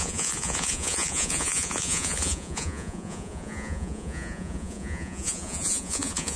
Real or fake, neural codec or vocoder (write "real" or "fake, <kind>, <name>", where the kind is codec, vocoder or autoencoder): fake, vocoder, Vocos